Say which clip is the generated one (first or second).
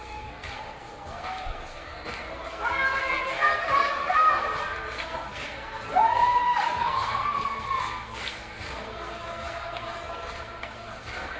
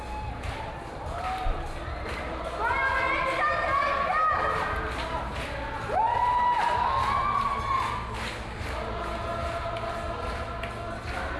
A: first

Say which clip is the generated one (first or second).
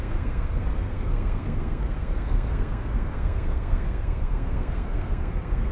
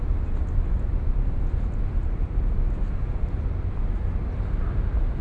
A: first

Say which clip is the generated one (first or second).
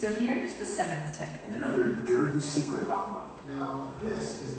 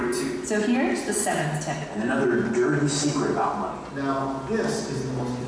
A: first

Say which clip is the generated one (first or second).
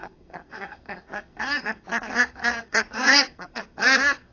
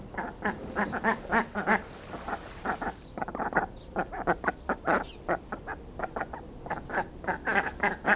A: first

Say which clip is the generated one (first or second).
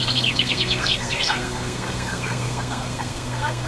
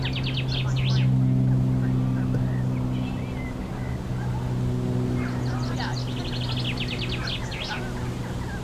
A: first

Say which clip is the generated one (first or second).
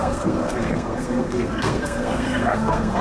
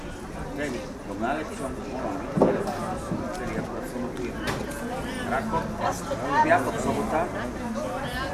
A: first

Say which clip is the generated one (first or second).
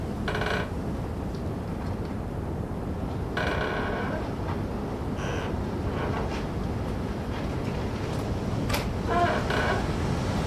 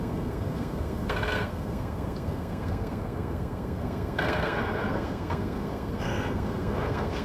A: second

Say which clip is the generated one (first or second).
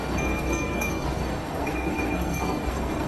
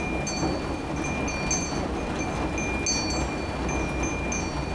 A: first